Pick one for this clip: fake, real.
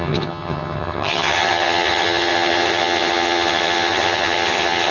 fake